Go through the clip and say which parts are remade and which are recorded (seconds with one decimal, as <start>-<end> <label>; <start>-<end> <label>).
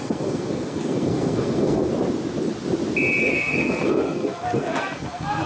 0.0-1.9 remade; 1.9-3.2 recorded; 3.2-5.5 remade